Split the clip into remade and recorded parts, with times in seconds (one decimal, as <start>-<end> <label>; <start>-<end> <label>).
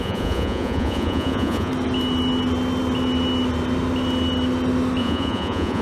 0.0-1.7 remade; 1.7-5.0 recorded; 5.0-5.8 remade